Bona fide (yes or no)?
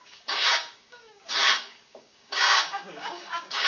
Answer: no